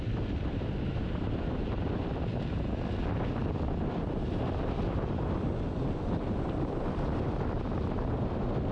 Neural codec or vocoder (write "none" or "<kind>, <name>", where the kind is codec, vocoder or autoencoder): vocoder, BigVGAN v2